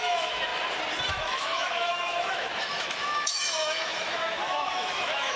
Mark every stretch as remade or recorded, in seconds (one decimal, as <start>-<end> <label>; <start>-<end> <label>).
0.0-0.5 remade; 0.5-1.1 recorded; 1.1-5.4 remade